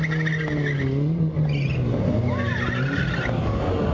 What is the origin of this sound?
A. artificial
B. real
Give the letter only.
B